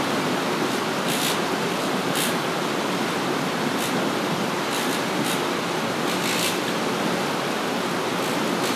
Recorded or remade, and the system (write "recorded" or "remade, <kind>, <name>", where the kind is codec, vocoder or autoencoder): recorded